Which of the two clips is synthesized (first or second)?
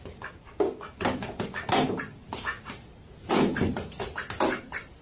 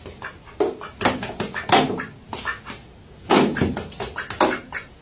first